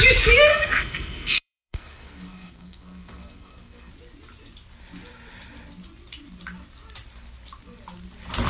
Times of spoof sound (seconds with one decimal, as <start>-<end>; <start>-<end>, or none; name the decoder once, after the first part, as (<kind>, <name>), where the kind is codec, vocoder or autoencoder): 0.5-3.9 (codec, SNAC)